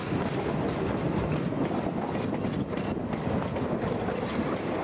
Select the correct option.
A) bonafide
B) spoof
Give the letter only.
A